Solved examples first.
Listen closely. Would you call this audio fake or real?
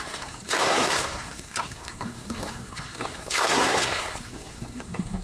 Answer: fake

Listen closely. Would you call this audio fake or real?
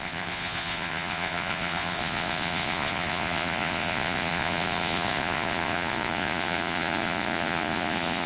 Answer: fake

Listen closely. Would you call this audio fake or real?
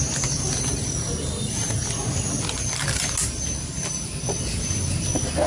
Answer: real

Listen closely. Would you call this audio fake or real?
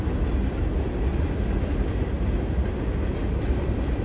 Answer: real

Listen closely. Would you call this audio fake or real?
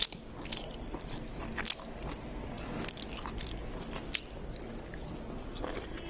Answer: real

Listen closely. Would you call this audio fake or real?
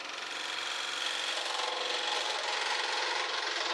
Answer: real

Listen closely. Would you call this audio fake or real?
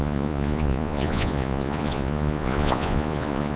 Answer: fake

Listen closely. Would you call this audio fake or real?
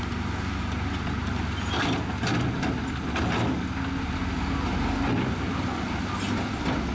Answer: real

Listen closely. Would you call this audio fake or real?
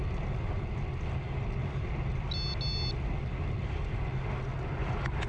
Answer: real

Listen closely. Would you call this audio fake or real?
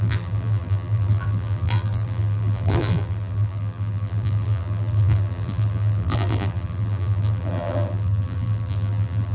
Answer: fake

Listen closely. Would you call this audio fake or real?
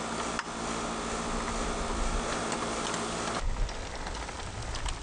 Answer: real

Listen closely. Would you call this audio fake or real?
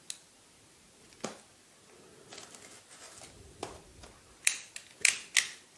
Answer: real